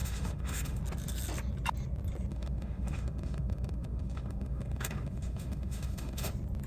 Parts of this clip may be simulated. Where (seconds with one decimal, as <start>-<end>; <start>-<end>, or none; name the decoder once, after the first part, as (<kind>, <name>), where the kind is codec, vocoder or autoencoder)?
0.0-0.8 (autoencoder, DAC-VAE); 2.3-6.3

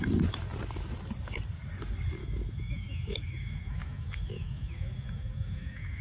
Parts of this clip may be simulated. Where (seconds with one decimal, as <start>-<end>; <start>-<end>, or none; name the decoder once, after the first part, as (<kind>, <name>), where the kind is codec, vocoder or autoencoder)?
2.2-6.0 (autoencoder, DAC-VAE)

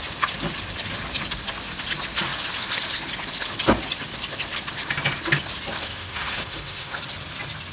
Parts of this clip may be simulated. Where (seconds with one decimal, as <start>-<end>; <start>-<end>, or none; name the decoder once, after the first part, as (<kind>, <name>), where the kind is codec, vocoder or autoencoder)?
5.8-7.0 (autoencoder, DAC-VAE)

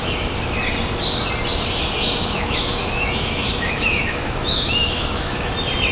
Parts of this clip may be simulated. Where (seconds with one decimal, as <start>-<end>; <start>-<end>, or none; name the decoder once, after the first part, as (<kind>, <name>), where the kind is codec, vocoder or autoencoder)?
2.0-5.5 (autoencoder, DAC-VAE)

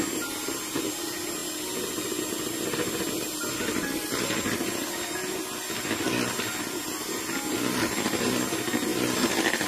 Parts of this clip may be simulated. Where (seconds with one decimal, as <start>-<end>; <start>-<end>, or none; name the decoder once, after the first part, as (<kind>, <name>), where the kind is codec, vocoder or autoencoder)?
none

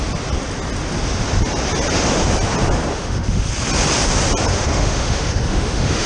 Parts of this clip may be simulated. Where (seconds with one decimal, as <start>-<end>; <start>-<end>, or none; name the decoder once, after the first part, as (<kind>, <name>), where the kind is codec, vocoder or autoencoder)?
2.9-3.5 (autoencoder, DAC-VAE); 4.5-6.1

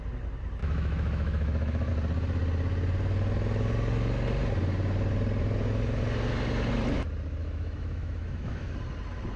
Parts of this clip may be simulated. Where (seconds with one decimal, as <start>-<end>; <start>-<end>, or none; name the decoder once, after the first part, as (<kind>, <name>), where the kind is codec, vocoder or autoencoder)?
0.6-1.9 (autoencoder, DAC-VAE); 7.4-8.7

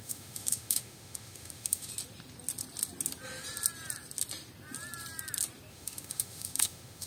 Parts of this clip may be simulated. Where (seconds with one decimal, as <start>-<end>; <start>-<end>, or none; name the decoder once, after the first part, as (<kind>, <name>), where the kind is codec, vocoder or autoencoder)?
0.0-1.9 (autoencoder, DAC-VAE); 5.7-7.1